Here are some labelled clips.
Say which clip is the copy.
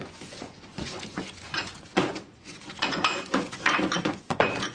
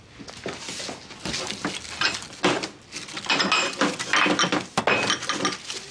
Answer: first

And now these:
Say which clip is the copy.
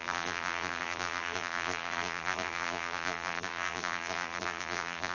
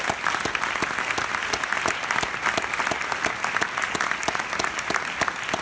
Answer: first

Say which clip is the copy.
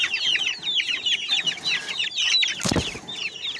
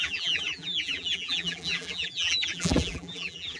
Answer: second